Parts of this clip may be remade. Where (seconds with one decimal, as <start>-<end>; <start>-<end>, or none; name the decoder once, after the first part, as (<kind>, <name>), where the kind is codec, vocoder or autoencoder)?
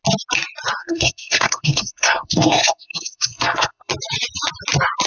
0.8-3.9 (codec, SNAC)